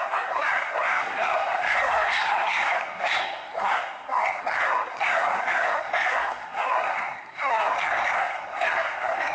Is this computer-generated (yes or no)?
yes